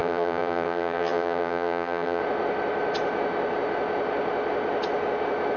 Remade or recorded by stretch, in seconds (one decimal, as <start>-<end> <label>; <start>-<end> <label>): 0.0-2.2 remade; 2.2-5.6 recorded